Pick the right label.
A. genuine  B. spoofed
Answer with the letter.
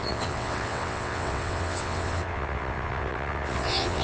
B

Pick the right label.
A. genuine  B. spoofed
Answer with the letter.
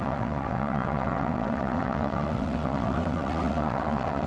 B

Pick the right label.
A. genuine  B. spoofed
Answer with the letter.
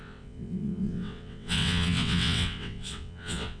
B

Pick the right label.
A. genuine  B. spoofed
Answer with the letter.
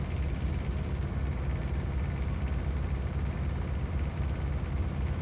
A